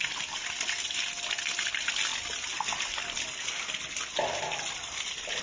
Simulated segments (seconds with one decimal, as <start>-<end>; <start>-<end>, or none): none